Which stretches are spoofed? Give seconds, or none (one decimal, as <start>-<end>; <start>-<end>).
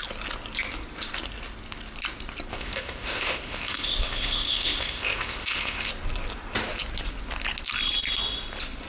2.5-5.9